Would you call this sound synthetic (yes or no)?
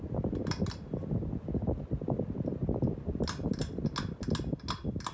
no